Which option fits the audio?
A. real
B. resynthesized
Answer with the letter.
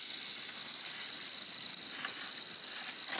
A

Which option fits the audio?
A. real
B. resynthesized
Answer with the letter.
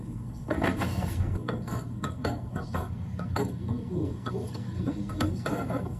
B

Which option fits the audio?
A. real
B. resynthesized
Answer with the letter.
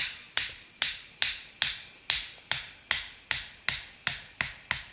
A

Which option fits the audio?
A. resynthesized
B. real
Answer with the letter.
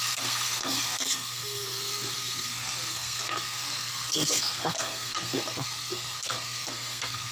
A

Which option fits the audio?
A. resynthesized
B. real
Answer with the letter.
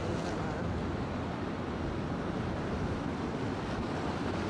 B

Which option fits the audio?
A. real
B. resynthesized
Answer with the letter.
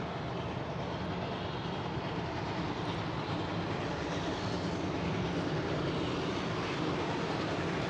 A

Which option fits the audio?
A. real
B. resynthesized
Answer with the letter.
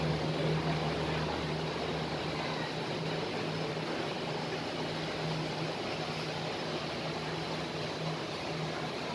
A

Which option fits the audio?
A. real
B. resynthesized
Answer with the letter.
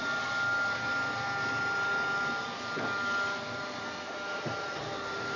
A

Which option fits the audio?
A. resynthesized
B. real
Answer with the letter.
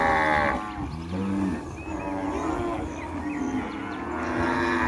B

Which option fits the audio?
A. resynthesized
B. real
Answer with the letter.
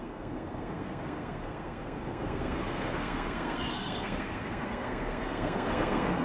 A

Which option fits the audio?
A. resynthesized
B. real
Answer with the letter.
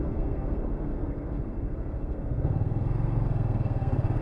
A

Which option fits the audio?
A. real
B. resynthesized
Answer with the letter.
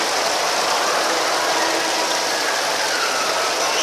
A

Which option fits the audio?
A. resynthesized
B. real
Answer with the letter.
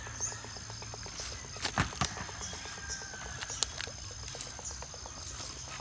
B